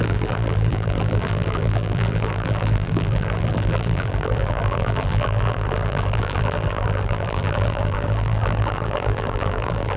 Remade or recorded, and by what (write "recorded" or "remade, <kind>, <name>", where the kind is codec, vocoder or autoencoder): remade, vocoder, BigVGAN v2